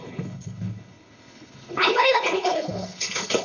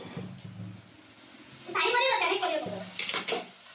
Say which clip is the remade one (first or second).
first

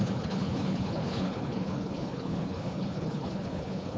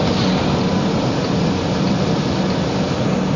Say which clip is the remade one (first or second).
first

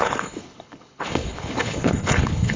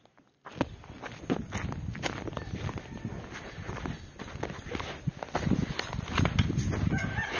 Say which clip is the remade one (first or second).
first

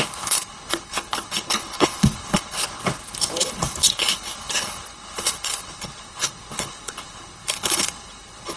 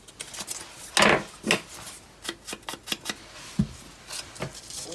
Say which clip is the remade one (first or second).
first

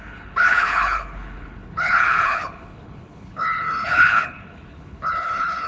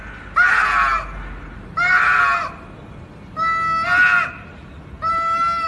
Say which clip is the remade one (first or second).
first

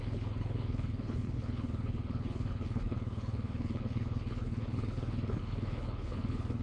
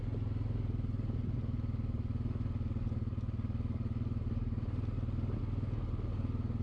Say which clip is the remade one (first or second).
first